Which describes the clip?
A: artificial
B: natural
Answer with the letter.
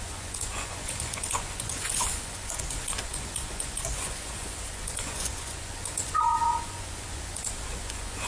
A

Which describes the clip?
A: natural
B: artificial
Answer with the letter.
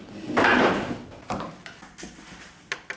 A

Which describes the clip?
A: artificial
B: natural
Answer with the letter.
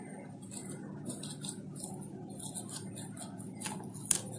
B